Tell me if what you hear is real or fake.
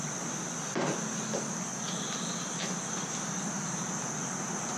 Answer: real